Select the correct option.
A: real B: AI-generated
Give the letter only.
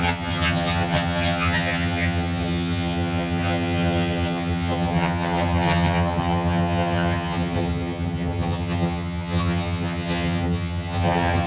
B